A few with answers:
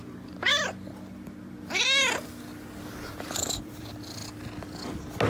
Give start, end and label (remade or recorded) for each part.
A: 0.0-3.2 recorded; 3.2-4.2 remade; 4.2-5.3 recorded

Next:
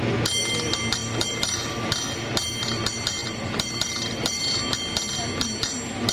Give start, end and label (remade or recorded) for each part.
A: 0.0-1.0 recorded; 1.0-1.8 remade; 1.8-3.2 recorded; 3.2-4.4 remade; 4.4-6.1 recorded

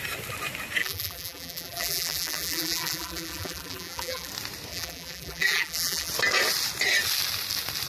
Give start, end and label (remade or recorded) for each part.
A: 0.0-0.8 recorded; 0.8-4.3 remade; 4.3-4.7 recorded; 4.7-6.1 remade; 6.1-7.9 recorded

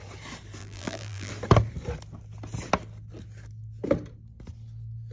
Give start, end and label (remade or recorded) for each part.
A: 0.0-0.6 recorded; 0.6-1.3 remade; 1.3-5.1 recorded

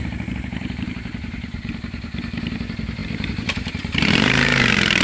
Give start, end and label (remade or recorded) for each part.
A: 0.0-5.0 remade

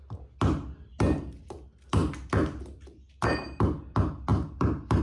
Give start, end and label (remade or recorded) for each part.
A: 0.0-4.3 recorded; 4.3-5.0 remade

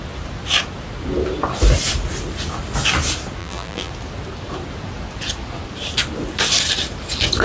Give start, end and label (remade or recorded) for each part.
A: 0.0-3.4 recorded; 3.4-3.9 remade; 3.9-7.4 recorded

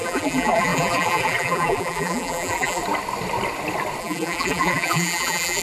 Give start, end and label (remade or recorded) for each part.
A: 0.0-2.8 remade; 2.8-4.0 recorded; 4.0-5.6 remade